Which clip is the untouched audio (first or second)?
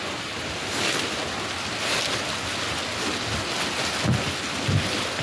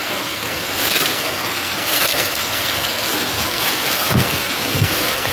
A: first